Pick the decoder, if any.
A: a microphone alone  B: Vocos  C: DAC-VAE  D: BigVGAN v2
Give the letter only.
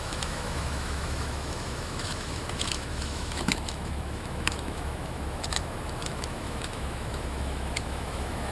C